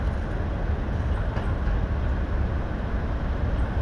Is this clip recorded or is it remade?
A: recorded